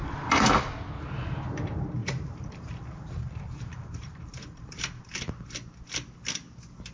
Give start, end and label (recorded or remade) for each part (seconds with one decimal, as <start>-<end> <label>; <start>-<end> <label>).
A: 0.0-2.0 recorded; 2.0-5.0 remade; 5.0-6.9 recorded